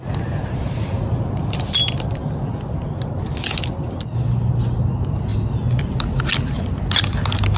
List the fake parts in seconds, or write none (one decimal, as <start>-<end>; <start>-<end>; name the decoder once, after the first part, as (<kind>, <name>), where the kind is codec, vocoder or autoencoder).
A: none